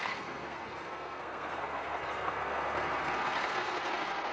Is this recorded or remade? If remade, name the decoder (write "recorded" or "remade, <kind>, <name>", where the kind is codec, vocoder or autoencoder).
remade, codec, SNAC